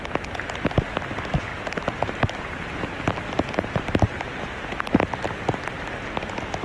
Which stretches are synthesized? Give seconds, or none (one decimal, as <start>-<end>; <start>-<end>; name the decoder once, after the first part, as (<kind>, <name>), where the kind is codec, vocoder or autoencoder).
1.5-4.3 (vocoder, BigVGAN v2)